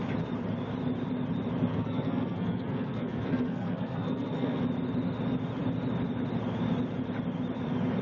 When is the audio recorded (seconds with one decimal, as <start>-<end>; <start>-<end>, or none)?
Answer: 0.0-1.7; 4.6-8.0